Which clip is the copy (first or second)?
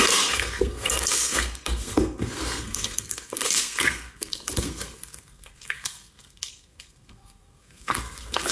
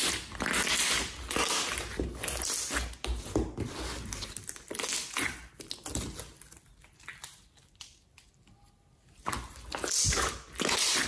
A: first